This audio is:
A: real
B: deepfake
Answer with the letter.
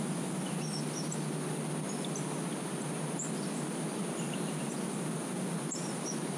A